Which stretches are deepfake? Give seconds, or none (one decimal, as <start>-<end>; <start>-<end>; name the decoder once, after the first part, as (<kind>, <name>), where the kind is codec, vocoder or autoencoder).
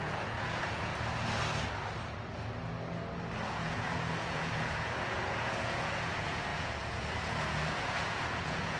0.0-0.9 (vocoder, Vocos); 3.5-8.8